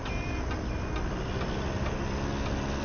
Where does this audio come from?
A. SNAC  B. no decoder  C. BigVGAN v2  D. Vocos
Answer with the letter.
B